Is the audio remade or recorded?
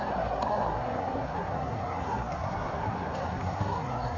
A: remade